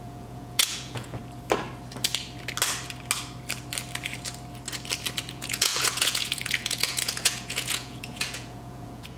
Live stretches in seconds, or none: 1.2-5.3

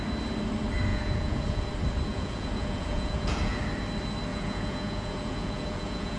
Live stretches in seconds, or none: 0.0-0.9; 1.7-2.1; 3.6-4.3